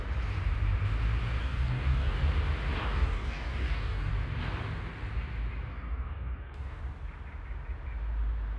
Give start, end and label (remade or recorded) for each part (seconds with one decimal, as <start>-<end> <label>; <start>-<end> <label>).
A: 0.0-1.4 recorded; 1.4-2.2 remade; 2.2-2.8 recorded; 2.8-4.1 remade; 4.1-5.7 recorded; 5.7-6.8 remade; 6.8-8.6 recorded